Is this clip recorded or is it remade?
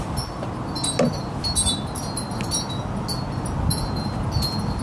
recorded